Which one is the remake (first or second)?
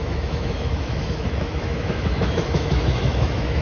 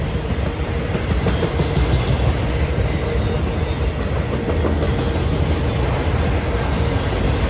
first